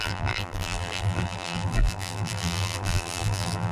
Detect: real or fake fake